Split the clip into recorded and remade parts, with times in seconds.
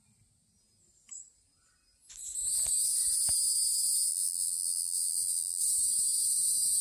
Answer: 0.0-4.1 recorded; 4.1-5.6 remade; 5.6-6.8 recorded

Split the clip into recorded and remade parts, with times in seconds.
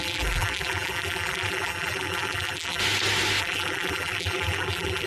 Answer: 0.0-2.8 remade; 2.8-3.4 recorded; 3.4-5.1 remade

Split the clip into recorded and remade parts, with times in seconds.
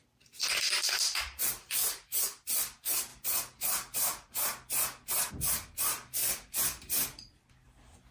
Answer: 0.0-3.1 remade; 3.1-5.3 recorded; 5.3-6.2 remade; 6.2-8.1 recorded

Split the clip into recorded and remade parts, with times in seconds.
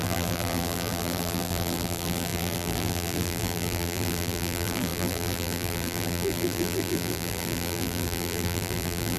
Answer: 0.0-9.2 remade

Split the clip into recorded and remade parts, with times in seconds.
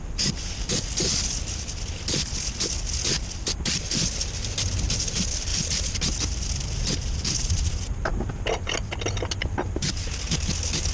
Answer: 0.0-10.9 recorded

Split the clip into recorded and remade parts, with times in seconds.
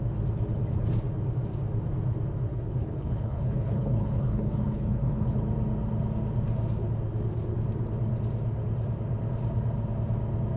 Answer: 0.0-2.5 recorded; 2.5-5.4 remade; 5.4-10.6 recorded